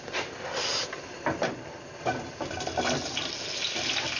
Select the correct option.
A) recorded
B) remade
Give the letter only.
A